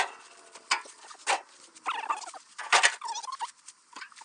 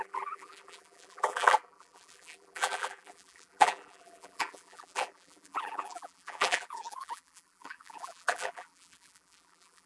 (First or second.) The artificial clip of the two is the second